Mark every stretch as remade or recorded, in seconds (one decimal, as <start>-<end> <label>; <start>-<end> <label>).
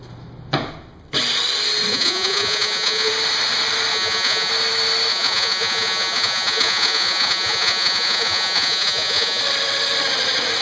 0.0-1.9 recorded; 1.9-3.1 remade; 3.1-3.9 recorded; 3.9-4.5 remade; 4.5-5.1 recorded; 5.1-9.4 remade; 9.4-10.6 recorded